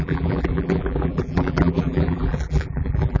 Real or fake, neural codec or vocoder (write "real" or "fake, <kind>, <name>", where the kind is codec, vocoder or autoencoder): fake, vocoder, BigVGAN v2